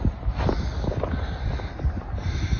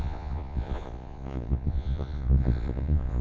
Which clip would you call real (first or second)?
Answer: first